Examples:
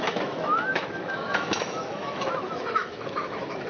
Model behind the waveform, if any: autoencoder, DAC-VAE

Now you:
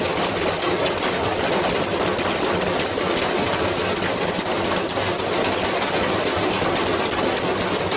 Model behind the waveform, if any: none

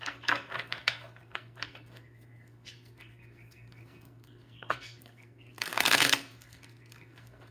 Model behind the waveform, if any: codec, SNAC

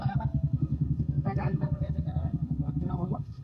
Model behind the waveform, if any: codec, SNAC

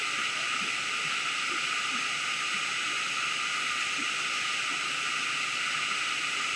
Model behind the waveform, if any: none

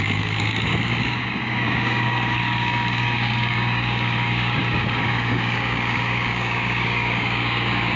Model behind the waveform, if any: codec, DAC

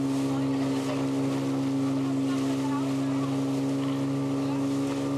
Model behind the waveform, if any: none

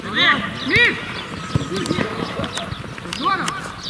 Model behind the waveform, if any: none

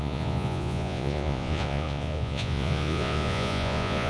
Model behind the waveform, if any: vocoder, Vocos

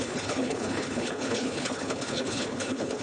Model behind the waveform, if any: codec, HILCodec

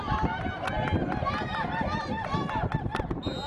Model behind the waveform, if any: none